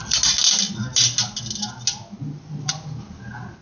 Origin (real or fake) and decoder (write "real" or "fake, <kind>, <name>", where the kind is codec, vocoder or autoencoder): real